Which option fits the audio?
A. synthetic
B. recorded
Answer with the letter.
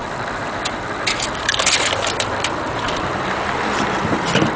A